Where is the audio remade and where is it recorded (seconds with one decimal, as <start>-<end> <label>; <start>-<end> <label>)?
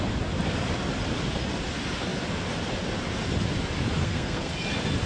0.0-4.0 recorded; 4.0-4.5 remade; 4.5-5.1 recorded